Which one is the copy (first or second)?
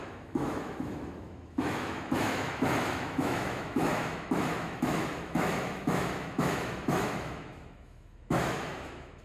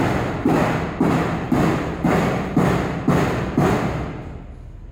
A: first